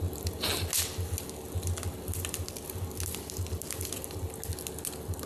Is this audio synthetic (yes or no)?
no